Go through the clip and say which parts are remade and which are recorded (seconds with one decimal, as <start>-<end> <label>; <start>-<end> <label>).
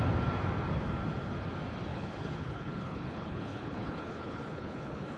0.0-1.9 recorded; 1.9-5.2 remade